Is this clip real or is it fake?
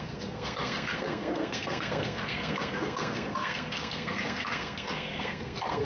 fake